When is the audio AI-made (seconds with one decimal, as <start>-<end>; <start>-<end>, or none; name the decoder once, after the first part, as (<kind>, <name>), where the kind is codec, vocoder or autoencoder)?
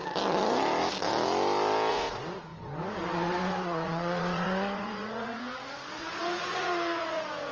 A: 1.9-2.5 (vocoder, Vocos); 3.5-7.5